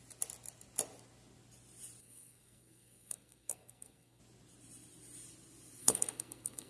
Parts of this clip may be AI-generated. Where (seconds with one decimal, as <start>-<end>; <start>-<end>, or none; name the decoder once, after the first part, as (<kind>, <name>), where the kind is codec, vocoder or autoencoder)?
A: 2.0-4.2 (codec, SNAC); 5.8-6.7